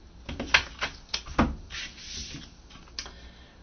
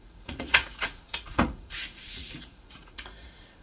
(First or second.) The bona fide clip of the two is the first